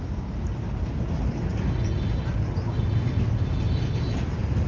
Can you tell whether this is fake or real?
real